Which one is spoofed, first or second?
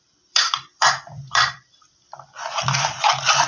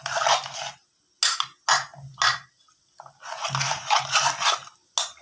first